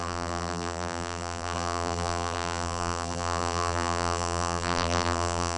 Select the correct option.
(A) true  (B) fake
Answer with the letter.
B